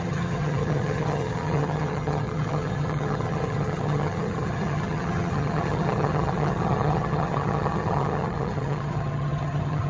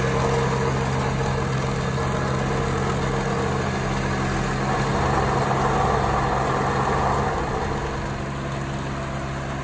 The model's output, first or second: first